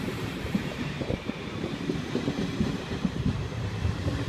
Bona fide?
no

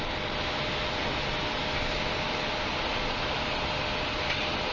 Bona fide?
yes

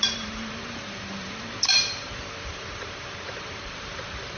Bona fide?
no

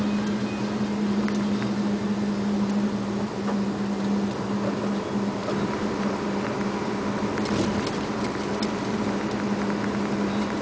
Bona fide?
yes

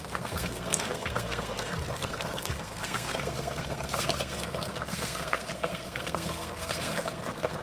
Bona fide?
no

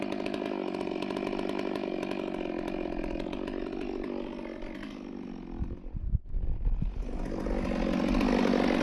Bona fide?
yes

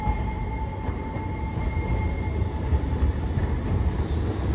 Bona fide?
yes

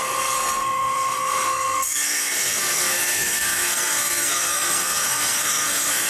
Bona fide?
no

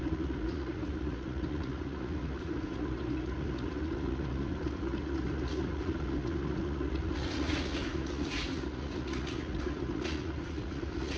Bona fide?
no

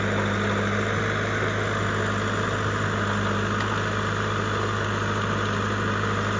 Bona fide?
yes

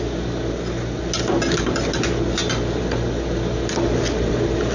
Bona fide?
yes